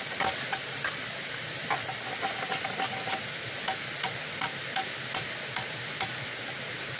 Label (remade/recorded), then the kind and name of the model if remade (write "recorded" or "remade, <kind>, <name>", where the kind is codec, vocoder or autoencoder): recorded